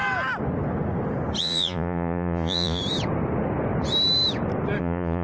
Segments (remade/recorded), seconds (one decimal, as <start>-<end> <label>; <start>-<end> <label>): 0.0-1.4 recorded; 1.4-2.8 remade; 2.8-4.8 recorded; 4.8-5.2 remade